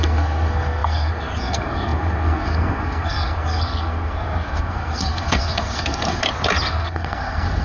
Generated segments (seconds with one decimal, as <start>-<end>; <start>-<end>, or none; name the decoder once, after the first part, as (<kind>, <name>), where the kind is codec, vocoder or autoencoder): 0.0-6.2 (codec, SNAC); 6.7-7.6